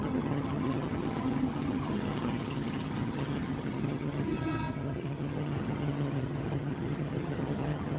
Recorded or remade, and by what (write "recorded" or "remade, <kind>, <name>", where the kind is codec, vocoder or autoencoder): remade, vocoder, HiFi-GAN